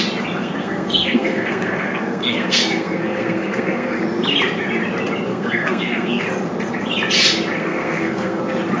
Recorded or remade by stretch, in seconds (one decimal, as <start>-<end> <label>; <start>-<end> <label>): 0.0-0.4 recorded; 0.4-4.0 remade; 4.0-5.3 recorded; 5.3-6.2 remade; 6.2-7.6 recorded; 7.6-8.4 remade; 8.4-8.8 recorded